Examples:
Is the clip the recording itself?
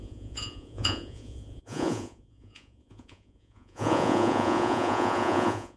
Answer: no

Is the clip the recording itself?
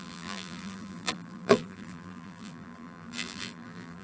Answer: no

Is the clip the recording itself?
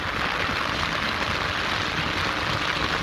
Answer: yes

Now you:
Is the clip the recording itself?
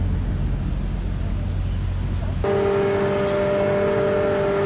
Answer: yes